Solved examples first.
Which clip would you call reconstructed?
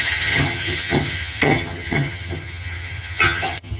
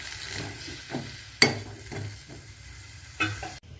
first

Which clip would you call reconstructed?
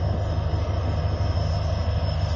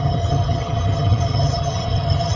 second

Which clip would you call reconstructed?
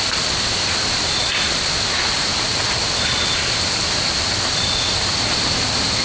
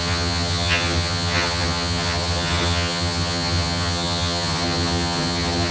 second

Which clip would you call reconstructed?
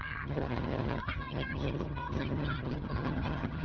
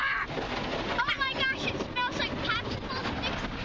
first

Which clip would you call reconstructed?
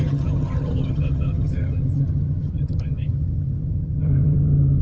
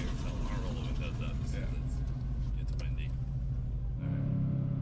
first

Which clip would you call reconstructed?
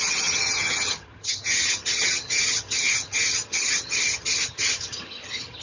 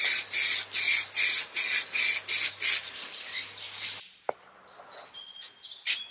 first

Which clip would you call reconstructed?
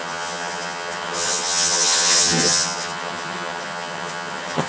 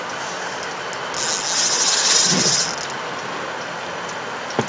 first